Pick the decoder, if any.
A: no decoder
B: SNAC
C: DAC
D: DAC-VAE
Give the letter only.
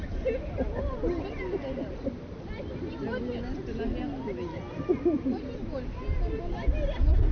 A